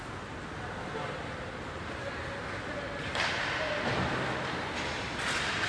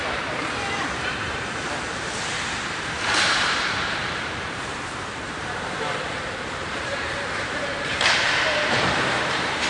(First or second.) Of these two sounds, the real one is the first